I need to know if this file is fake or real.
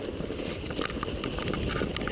real